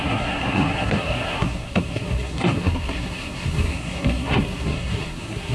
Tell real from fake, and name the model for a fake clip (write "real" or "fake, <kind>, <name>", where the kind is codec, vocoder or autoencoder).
fake, codec, SNAC